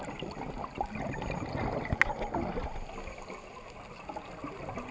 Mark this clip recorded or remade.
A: recorded